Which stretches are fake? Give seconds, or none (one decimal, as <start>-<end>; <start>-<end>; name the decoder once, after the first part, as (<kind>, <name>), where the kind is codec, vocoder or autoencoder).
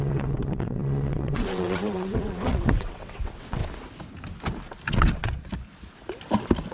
0.0-3.6 (vocoder, WaveNeXt); 4.9-5.5